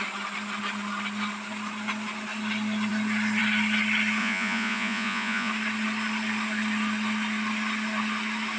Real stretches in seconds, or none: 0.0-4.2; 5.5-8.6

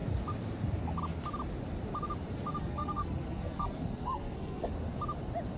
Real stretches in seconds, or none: 0.0-2.6; 4.7-5.6

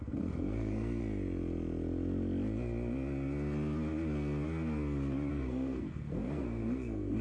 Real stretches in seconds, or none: 1.0-5.3

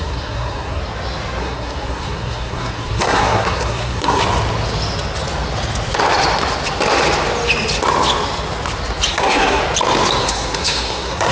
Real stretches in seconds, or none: 0.8-1.4; 4.2-9.1; 9.6-10.2

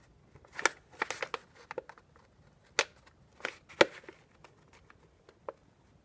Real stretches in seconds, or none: 0.0-6.0

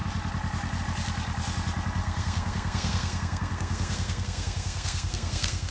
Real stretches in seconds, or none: 0.0-2.0

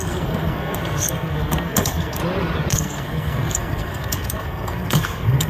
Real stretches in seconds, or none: 2.2-2.7

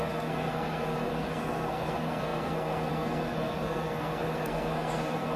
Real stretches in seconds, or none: none